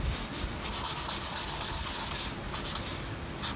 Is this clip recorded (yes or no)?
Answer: yes